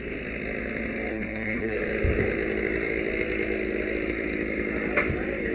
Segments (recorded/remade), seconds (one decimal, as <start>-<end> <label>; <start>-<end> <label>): 0.0-1.1 recorded; 1.1-1.8 remade; 1.8-5.5 recorded